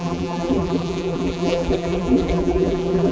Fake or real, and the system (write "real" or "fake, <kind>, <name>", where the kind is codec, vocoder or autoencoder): fake, vocoder, BigVGAN v2